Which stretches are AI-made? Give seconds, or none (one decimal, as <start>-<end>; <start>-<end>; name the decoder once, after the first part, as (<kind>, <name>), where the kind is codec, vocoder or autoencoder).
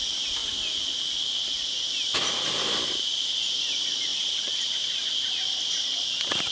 none